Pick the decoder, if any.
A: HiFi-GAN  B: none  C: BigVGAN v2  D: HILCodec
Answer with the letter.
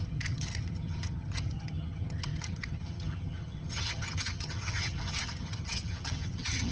A